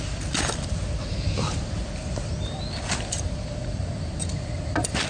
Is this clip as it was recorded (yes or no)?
yes